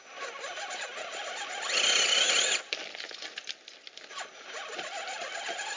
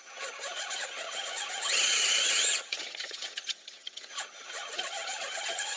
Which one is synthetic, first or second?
second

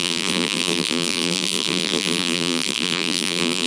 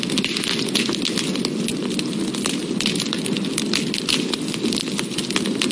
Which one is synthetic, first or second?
first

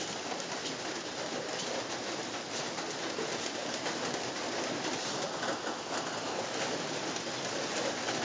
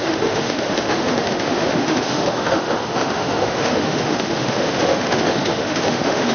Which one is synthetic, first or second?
second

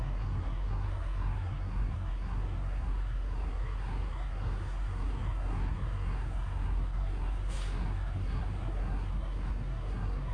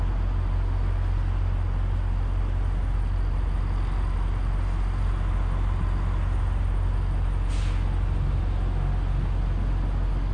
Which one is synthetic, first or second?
first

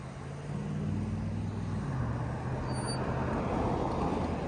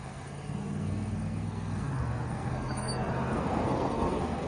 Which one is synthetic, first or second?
second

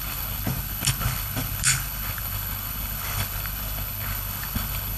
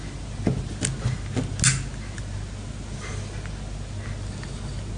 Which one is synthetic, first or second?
first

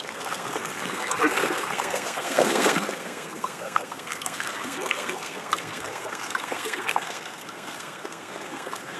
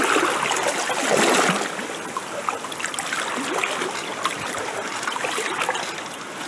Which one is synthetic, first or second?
first